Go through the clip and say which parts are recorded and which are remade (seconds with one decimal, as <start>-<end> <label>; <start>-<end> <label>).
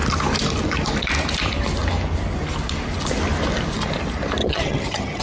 0.0-4.4 recorded; 4.4-5.2 remade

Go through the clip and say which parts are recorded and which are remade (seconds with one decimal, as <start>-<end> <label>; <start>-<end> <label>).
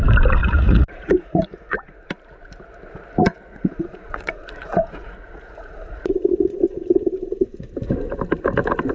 0.0-0.4 recorded; 0.4-2.1 remade; 2.1-3.5 recorded; 3.5-7.7 remade; 7.7-8.9 recorded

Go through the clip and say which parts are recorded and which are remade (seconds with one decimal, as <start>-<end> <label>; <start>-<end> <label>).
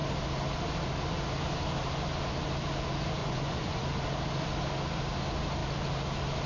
0.0-3.2 recorded; 3.2-3.8 remade; 3.8-6.5 recorded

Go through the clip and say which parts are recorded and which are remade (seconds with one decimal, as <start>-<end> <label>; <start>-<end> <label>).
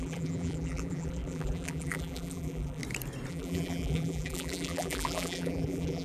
0.0-2.8 remade; 2.8-3.3 recorded; 3.3-6.0 remade